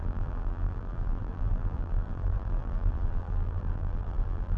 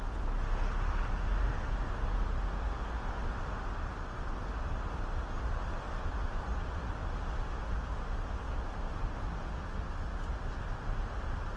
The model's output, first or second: first